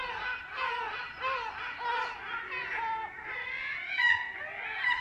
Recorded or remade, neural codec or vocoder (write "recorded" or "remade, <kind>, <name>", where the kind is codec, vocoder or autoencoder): recorded